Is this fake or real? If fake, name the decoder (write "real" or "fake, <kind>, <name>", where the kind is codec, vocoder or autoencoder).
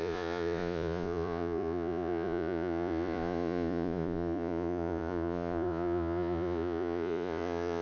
fake, vocoder, Vocos